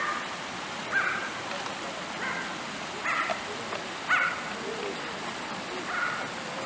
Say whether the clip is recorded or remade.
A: recorded